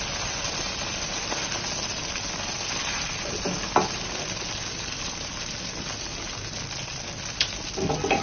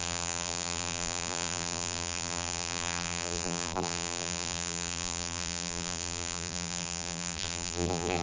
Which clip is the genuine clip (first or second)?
first